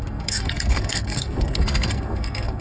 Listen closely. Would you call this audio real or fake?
fake